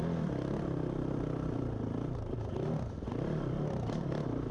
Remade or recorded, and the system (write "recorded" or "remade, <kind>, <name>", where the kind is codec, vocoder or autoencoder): recorded